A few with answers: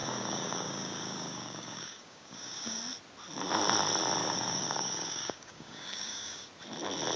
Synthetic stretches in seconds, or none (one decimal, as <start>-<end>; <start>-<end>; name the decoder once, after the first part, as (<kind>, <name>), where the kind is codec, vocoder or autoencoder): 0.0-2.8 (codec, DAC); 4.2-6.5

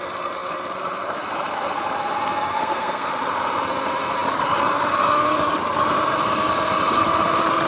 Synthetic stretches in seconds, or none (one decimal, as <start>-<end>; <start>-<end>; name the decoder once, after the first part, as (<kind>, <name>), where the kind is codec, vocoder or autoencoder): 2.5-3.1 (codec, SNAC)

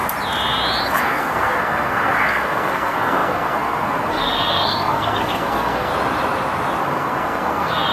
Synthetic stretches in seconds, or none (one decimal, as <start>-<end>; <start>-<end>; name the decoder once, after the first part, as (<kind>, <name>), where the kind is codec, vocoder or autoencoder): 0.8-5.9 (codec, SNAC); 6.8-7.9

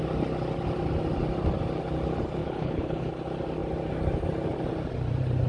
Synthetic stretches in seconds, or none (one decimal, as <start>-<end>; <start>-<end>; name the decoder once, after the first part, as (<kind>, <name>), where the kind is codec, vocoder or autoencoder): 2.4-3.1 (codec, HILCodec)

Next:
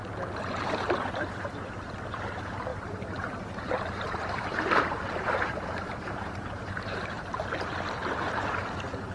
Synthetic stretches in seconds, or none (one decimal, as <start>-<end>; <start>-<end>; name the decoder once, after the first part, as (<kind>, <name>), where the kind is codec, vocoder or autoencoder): 2.7-7.2 (vocoder, BigVGAN v2); 8.0-9.1

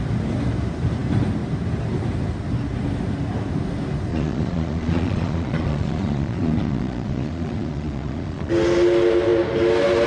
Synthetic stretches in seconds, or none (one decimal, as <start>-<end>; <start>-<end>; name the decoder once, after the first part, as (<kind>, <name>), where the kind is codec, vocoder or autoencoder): 4.1-8.5 (vocoder, Vocos)